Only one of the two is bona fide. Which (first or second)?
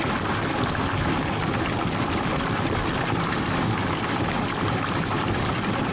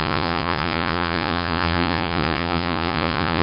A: first